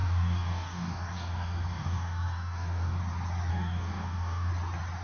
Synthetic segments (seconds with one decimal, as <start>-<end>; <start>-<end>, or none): 0.0-3.0; 3.5-4.5